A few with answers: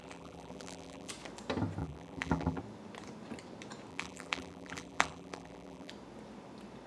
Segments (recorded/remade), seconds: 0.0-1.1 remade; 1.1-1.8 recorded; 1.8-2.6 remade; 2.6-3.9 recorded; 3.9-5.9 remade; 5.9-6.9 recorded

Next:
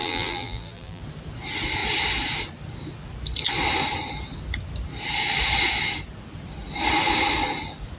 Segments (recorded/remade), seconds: 0.0-1.0 remade; 1.0-8.0 recorded

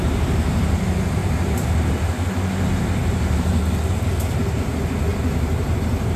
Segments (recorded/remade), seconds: 0.0-1.2 recorded; 1.2-1.7 remade; 1.7-3.0 recorded; 3.0-3.5 remade; 3.5-6.2 recorded

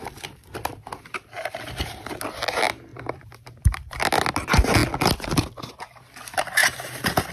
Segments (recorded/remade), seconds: 0.0-2.9 recorded; 2.9-4.0 remade; 4.0-6.6 recorded; 6.6-7.3 remade